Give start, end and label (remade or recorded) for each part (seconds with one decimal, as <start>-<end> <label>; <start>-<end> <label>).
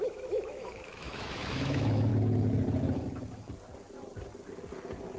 0.0-2.1 remade; 2.1-5.2 recorded